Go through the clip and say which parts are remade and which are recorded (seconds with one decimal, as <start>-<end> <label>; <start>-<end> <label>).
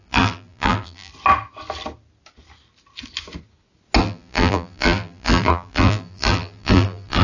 0.0-1.1 remade; 1.1-4.0 recorded; 4.0-7.2 remade